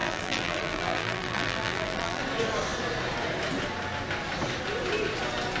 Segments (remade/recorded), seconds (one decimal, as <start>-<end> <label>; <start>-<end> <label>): 0.0-2.2 remade; 2.2-5.6 recorded